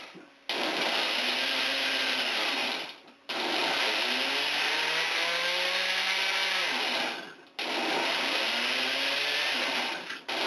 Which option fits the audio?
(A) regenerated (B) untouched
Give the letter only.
B